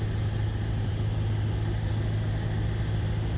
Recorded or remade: recorded